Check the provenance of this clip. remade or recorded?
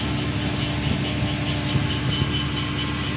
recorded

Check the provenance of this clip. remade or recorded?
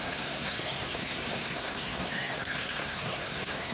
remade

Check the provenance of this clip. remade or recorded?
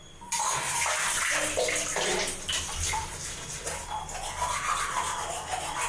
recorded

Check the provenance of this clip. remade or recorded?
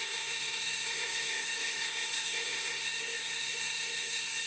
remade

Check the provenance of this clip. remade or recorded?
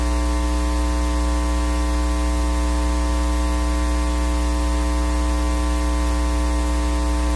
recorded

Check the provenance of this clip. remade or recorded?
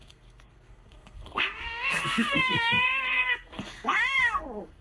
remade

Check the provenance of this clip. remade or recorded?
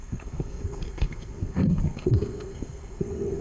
remade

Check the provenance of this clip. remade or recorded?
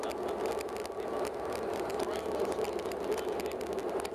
recorded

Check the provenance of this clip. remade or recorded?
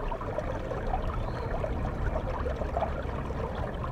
recorded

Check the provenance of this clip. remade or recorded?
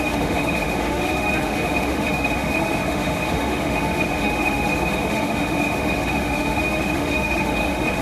remade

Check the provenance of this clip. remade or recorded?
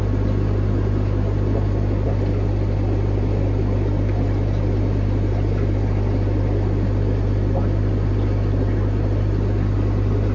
recorded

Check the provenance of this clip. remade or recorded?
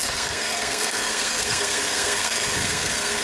remade